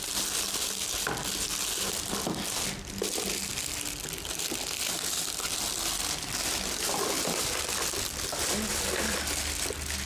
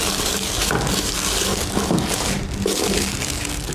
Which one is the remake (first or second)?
second